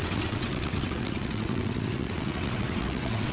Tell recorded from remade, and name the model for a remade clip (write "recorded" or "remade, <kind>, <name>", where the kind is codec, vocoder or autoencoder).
remade, vocoder, WaveNeXt